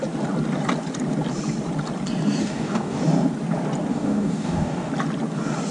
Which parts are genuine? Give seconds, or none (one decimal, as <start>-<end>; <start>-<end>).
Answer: 0.0-2.4; 3.0-3.9; 4.9-5.7